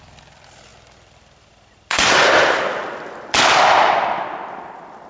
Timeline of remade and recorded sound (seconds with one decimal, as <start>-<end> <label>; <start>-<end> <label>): 0.0-5.1 recorded